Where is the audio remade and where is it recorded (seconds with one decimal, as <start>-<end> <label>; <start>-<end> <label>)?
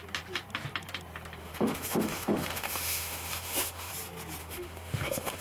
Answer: 0.0-1.4 recorded; 1.4-3.9 remade; 3.9-4.4 recorded; 4.4-5.4 remade